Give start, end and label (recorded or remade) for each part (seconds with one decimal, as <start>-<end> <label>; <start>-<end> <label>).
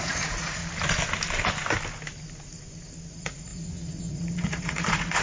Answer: 0.0-0.6 remade; 0.6-3.1 recorded; 3.1-5.2 remade